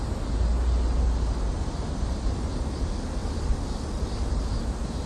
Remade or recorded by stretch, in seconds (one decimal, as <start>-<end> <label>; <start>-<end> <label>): 0.0-3.2 recorded; 3.2-4.0 remade; 4.0-5.1 recorded